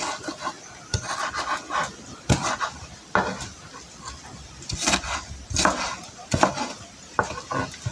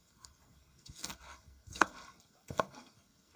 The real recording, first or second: first